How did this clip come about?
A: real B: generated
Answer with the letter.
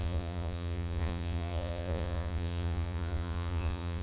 B